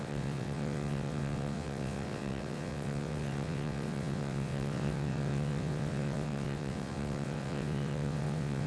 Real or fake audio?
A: fake